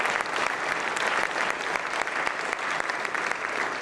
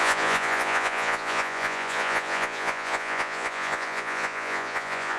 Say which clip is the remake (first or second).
second